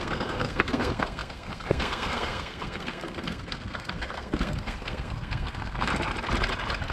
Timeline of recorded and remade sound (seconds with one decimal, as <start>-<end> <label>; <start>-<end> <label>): 0.0-5.9 remade; 5.9-6.9 recorded